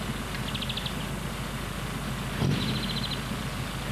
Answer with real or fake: real